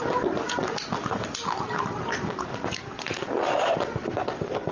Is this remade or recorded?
recorded